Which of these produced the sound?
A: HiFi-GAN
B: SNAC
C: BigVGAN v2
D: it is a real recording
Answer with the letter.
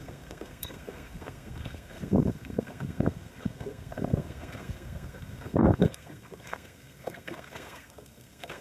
B